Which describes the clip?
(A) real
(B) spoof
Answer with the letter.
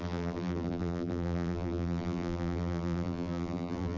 B